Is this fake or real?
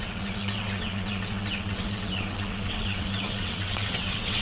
fake